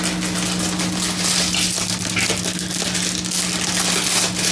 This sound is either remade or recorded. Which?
recorded